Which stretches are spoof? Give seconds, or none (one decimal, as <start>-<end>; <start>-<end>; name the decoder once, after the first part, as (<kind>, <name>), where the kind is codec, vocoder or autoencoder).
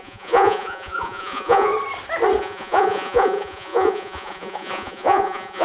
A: 0.0-1.7 (vocoder, Vocos); 2.4-5.6